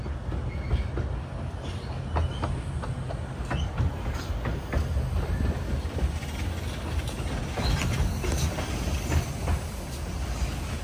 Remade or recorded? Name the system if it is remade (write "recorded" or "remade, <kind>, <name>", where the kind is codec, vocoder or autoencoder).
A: recorded